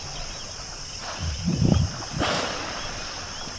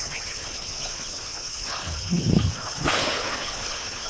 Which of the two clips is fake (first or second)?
second